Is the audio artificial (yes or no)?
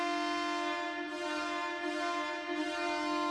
no